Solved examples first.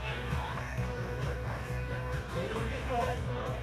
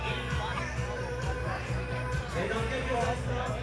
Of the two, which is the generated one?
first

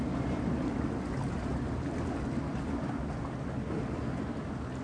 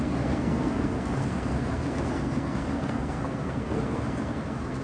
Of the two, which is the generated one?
second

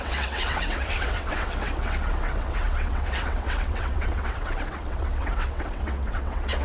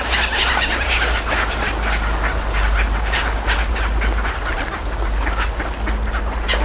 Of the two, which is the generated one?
first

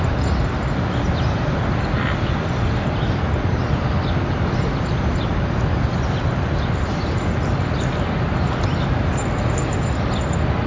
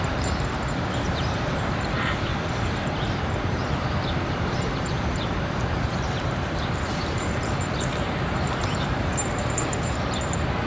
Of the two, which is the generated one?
second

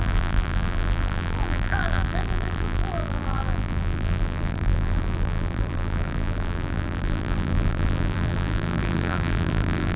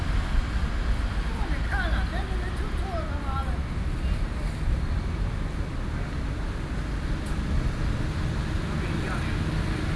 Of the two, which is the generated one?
first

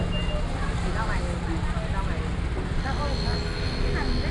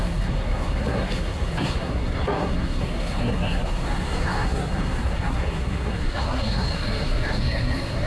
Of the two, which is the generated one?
second